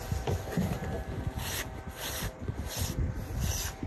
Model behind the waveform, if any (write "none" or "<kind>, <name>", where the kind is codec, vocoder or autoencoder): none